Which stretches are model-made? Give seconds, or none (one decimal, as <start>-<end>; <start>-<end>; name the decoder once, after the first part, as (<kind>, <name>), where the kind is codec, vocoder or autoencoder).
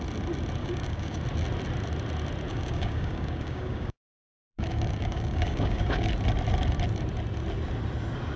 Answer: 0.6-1.2 (codec, DAC); 2.5-6.1